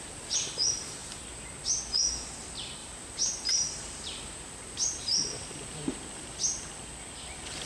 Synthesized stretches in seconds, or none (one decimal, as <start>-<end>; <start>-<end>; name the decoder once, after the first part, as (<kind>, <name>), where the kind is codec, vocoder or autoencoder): 2.8-6.7 (vocoder, BigVGAN v2)